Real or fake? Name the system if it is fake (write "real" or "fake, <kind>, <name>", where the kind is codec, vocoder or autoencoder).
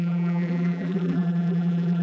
fake, vocoder, BigVGAN v2